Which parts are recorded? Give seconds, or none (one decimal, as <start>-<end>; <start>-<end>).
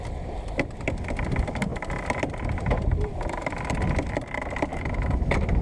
0.0-4.7